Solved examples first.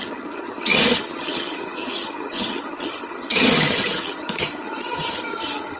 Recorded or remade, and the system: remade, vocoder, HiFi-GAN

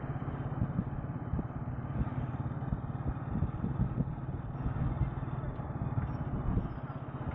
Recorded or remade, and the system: recorded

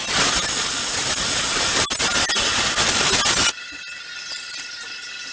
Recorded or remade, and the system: recorded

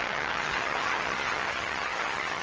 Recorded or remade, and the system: remade, vocoder, HiFi-GAN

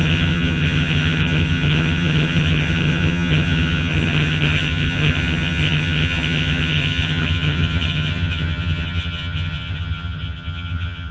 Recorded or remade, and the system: remade, vocoder, HiFi-GAN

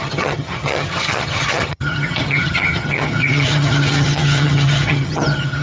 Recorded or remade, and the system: remade, vocoder, HiFi-GAN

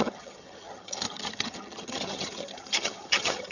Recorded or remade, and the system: remade, vocoder, HiFi-GAN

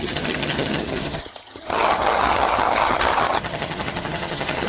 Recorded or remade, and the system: remade, vocoder, HiFi-GAN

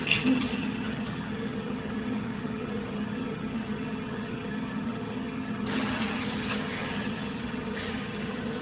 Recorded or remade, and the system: remade, vocoder, HiFi-GAN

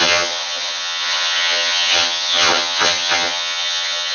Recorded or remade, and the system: remade, vocoder, HiFi-GAN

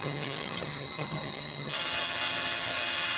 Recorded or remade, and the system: remade, vocoder, HiFi-GAN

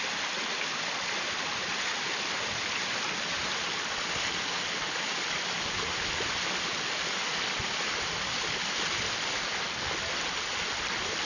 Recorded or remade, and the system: recorded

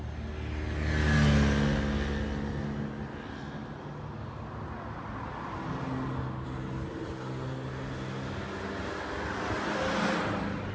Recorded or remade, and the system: recorded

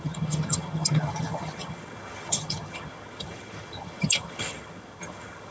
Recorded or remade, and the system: remade, vocoder, HiFi-GAN